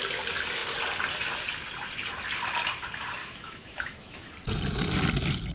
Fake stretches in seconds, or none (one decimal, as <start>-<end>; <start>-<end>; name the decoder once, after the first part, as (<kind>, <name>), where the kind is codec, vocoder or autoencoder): 3.2-4.3 (autoencoder, DAC-VAE)